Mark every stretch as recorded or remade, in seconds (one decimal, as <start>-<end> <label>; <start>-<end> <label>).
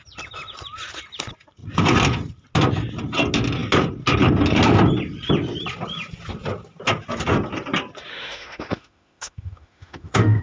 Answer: 0.0-8.1 recorded; 8.1-10.4 remade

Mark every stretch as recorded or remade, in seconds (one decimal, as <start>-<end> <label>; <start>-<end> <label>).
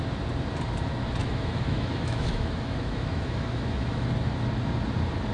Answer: 0.0-1.2 recorded; 1.2-4.1 remade; 4.1-5.3 recorded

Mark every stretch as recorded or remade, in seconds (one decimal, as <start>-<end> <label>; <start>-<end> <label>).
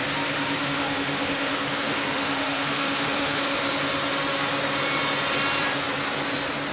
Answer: 0.0-0.6 recorded; 0.6-3.6 remade; 3.6-6.7 recorded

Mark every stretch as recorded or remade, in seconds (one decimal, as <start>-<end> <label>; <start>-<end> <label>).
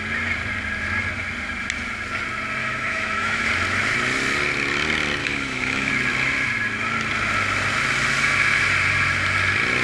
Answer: 0.0-2.6 recorded; 2.6-3.5 remade; 3.5-5.2 recorded; 5.2-5.9 remade; 5.9-9.8 recorded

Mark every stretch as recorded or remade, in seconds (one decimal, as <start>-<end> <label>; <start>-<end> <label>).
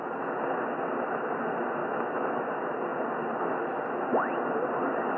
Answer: 0.0-1.8 recorded; 1.8-2.5 remade; 2.5-5.2 recorded